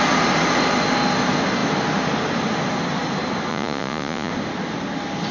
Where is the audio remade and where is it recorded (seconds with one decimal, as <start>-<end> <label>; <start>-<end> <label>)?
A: 0.0-3.5 recorded; 3.5-4.3 remade; 4.3-5.3 recorded